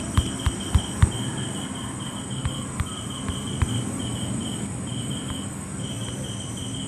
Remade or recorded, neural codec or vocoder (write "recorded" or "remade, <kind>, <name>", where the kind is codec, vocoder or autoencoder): recorded